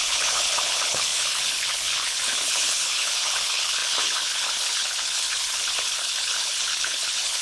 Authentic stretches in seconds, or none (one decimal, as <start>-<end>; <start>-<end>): none